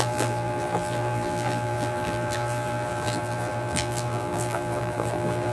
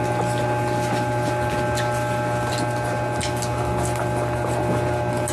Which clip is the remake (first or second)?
first